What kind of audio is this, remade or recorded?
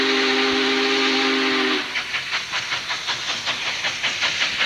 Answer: recorded